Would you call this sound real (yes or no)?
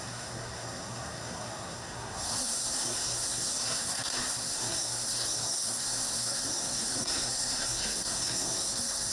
no